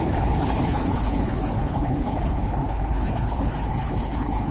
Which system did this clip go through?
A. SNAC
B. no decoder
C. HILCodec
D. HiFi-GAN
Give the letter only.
C